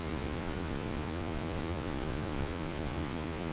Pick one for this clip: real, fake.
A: fake